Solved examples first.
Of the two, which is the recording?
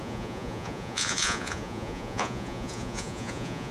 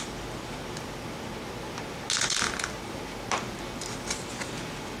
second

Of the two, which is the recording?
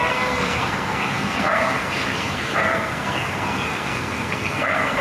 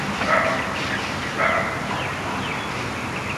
second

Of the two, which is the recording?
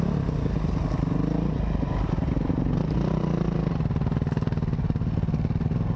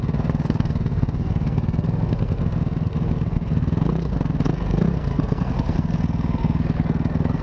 first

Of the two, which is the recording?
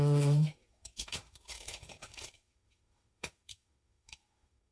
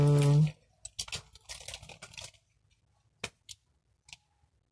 second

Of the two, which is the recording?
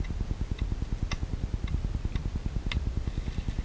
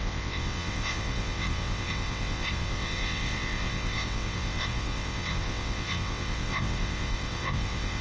first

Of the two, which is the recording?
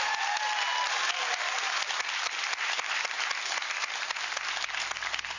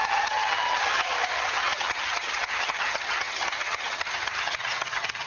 first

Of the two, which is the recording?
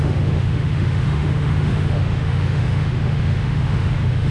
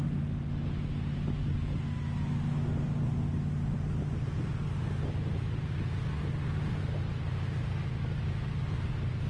second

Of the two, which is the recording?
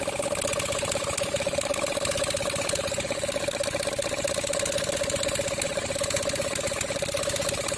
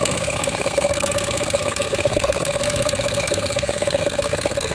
first